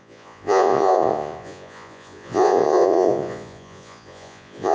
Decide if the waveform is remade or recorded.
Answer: remade